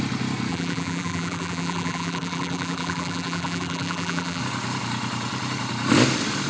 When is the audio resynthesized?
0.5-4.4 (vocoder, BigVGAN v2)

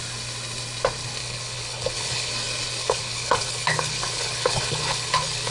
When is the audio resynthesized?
1.2-2.3 (codec, HILCodec); 2.8-5.5